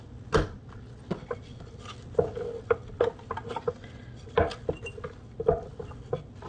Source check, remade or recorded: recorded